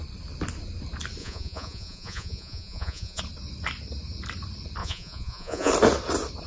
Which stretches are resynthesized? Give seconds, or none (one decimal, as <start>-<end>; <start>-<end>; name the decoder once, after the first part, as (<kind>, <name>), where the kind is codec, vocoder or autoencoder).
1.2-3.2 (vocoder, Vocos); 4.8-5.7